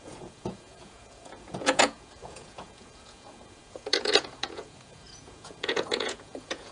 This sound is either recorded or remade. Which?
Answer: remade